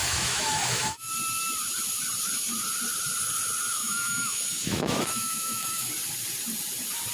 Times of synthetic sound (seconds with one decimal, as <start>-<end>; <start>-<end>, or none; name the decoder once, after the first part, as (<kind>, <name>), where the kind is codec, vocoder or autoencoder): 0.0-1.1 (autoencoder, DAC-VAE); 3.8-5.9